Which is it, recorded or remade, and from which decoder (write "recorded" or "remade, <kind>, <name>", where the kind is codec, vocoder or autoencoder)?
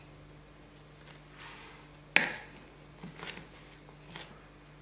recorded